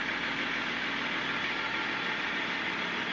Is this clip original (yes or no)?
yes